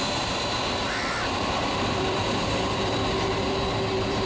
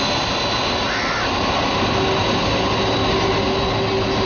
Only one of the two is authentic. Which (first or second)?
second